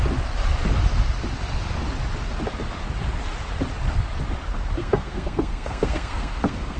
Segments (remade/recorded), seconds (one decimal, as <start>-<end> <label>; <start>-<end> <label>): 0.0-4.8 recorded; 4.8-6.8 remade